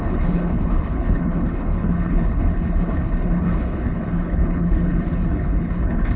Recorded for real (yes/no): no